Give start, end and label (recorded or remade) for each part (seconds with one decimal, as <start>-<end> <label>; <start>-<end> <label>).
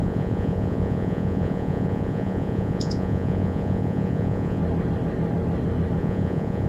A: 0.0-4.6 remade; 4.6-6.0 recorded; 6.0-6.7 remade